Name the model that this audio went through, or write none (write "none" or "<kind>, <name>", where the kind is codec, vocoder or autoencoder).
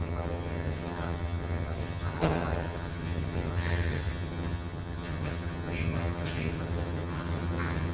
vocoder, HiFi-GAN